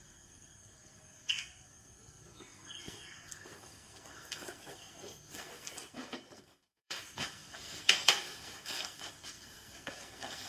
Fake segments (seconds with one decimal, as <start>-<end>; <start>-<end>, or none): 0.0-10.5

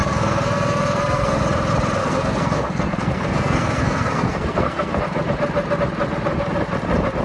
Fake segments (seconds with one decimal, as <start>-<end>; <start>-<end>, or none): 0.0-1.4; 2.0-5.0

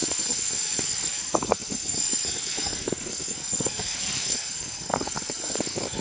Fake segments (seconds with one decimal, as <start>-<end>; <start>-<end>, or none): 0.0-6.0

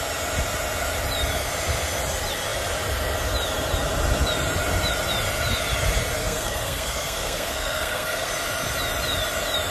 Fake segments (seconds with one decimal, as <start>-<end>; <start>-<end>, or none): 6.2-8.3